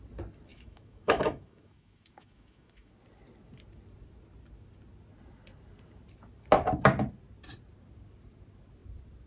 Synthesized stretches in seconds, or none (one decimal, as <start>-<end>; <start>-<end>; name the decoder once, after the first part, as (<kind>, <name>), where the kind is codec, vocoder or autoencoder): 0.5-2.9 (autoencoder, DAC-VAE)